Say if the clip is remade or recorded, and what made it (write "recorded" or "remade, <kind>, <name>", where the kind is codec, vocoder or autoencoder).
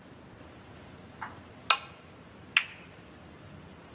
recorded